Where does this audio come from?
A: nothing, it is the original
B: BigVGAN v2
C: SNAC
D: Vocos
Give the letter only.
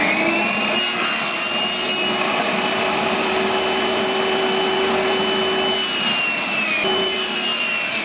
A